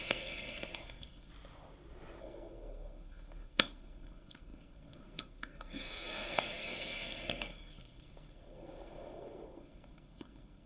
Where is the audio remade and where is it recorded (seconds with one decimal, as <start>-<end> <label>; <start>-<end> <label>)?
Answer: 0.0-1.3 remade; 1.3-2.2 recorded; 2.2-10.7 remade